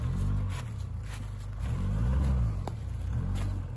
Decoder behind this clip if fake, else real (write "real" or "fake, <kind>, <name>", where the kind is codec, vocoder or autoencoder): real